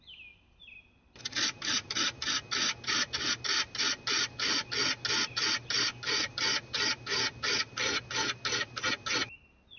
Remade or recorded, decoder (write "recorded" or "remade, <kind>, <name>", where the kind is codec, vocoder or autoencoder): recorded